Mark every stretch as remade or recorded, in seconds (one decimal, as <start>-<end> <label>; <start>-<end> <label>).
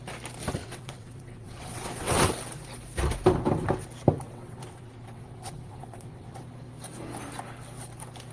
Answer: 0.0-0.6 recorded; 0.6-2.3 remade; 2.3-4.3 recorded; 4.3-6.4 remade; 6.4-8.3 recorded